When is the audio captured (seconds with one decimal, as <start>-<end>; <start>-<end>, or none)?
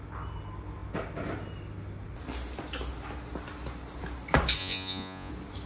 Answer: 0.0-4.6; 5.3-5.7